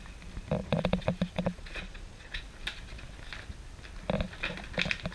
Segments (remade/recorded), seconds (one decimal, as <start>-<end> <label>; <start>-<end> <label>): 0.0-0.6 recorded; 0.6-2.4 remade; 2.4-5.1 recorded